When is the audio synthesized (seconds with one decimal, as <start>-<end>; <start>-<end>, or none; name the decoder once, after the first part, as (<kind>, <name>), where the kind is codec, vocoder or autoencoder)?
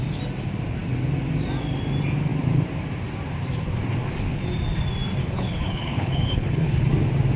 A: 5.2-6.9 (codec, HILCodec)